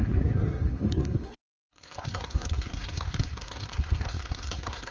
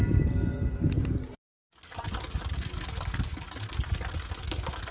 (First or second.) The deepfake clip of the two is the first